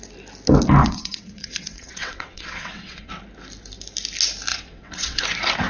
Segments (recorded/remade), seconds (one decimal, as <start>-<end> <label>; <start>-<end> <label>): 0.0-0.8 recorded; 0.8-3.1 remade; 3.1-4.5 recorded; 4.5-5.2 remade; 5.2-5.7 recorded